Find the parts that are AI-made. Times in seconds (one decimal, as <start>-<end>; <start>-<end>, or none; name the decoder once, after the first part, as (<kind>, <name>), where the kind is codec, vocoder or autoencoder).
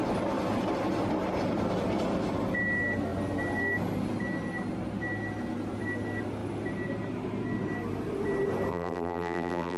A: 8.7-9.8 (vocoder, BigVGAN v2)